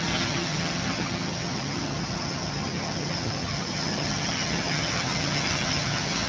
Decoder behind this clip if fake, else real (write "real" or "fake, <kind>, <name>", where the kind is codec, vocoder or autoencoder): fake, vocoder, HiFi-GAN